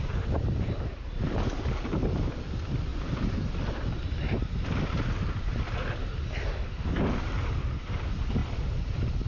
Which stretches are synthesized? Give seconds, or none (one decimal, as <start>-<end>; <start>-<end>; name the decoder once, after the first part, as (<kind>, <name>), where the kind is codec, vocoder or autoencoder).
none